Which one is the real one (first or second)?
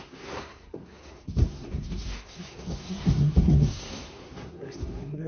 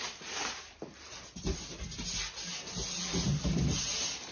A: second